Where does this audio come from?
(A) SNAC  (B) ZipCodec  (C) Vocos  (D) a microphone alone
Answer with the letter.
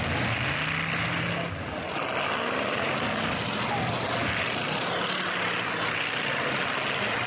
D